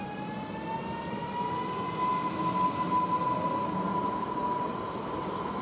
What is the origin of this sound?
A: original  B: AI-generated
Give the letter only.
A